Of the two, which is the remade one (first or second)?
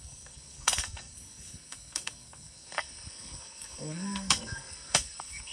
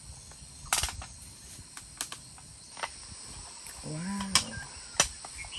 first